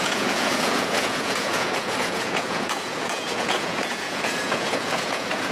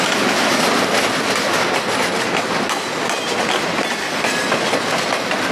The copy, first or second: first